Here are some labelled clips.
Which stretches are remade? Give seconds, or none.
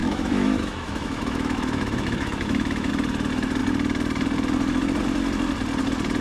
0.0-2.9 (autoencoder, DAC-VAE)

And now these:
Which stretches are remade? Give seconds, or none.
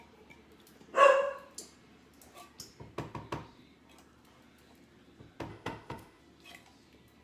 5.5-6.2 (autoencoder, DAC-VAE)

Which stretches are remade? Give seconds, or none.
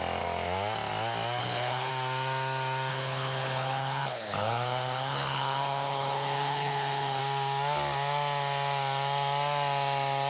1.4-1.9 (codec, HILCodec); 2.9-7.2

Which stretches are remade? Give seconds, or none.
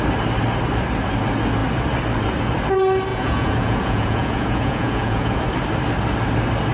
3.1-5.4 (vocoder, Vocos)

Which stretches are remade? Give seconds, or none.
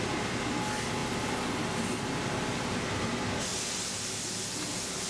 none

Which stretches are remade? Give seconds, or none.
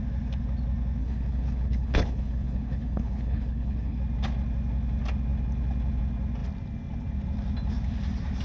1.0-4.0 (codec, HILCodec)